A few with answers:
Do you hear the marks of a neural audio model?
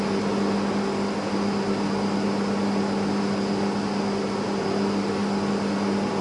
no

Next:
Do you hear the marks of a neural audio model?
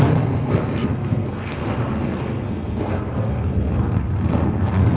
yes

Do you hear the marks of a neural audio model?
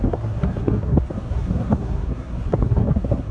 yes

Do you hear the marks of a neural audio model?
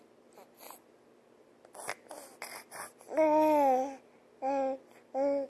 no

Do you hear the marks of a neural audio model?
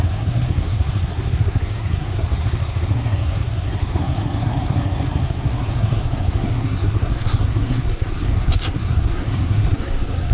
yes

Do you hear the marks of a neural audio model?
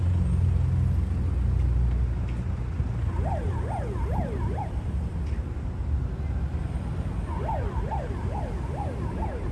no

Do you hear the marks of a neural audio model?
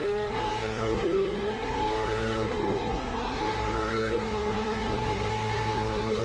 yes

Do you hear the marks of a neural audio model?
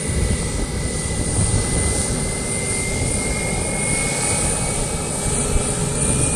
no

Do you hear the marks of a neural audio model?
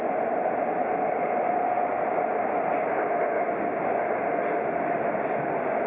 no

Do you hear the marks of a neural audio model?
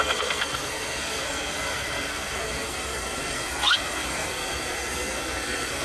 yes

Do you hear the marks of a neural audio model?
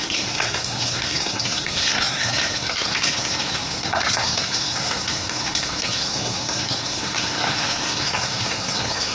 yes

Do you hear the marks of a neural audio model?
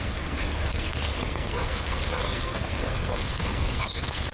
yes